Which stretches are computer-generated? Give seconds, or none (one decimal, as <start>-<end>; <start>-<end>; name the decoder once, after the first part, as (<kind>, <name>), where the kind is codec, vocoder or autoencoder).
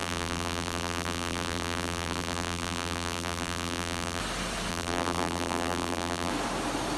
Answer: 0.0-4.2 (vocoder, BigVGAN v2); 4.7-6.3